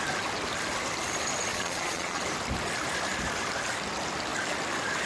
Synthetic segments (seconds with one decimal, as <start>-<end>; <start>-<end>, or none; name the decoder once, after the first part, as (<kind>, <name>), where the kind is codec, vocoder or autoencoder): 1.5-2.2 (vocoder, Vocos)